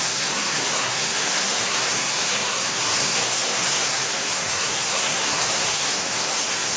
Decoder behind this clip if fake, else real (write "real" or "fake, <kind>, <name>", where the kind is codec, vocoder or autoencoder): fake, codec, SNAC